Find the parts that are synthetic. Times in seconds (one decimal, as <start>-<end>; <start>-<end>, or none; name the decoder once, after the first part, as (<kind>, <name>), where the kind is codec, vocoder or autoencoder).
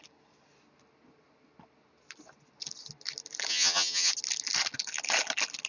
3.5-4.1 (vocoder, HiFi-GAN)